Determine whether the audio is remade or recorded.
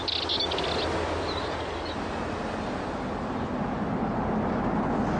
recorded